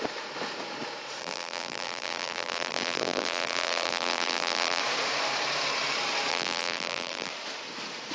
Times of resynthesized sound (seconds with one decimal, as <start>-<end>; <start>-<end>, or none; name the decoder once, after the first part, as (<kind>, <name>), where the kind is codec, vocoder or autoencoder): 1.2-4.8 (vocoder, BigVGAN v2); 6.3-7.3